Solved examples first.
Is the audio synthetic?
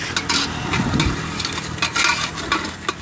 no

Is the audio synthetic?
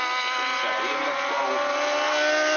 no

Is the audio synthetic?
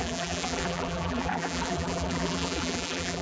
yes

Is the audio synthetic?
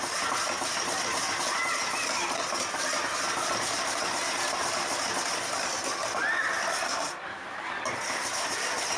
no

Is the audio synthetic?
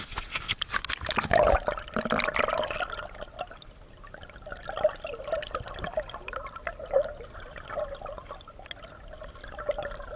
no